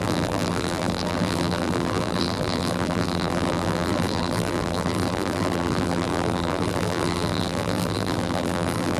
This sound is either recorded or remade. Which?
remade